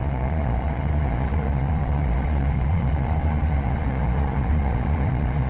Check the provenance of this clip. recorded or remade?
remade